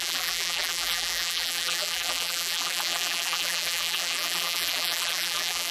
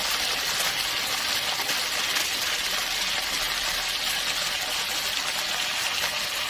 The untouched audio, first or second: second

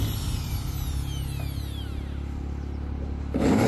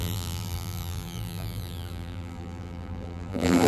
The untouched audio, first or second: first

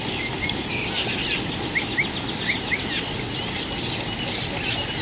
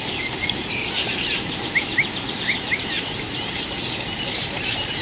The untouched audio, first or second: first